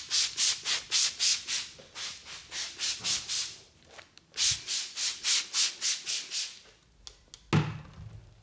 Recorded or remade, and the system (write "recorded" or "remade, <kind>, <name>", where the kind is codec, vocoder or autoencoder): recorded